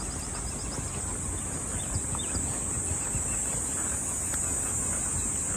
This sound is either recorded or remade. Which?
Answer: recorded